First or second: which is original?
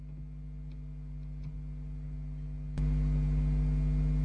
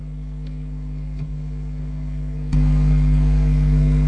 first